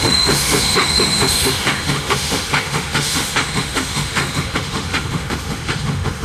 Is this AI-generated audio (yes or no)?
yes